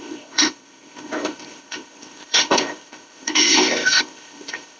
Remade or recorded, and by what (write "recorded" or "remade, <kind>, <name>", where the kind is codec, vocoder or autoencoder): remade, codec, ZipCodec